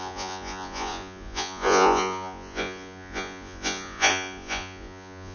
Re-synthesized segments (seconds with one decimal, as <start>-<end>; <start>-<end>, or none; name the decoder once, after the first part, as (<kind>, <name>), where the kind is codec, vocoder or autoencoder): 0.0-5.3 (vocoder, Vocos)